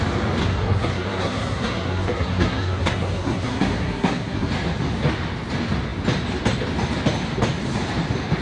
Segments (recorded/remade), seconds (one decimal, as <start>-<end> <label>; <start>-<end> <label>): 0.0-0.4 recorded; 0.4-4.5 remade; 4.5-8.4 recorded